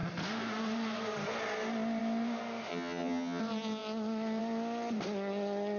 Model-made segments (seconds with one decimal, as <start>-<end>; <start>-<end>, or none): 2.7-3.4